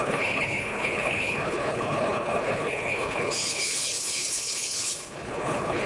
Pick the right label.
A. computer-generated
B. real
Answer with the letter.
A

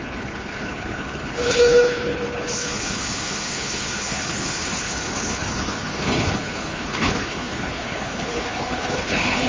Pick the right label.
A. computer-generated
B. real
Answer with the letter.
A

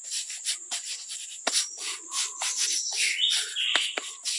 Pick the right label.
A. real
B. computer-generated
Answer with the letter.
A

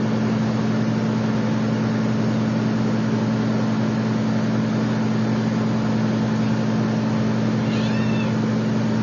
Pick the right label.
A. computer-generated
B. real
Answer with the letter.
B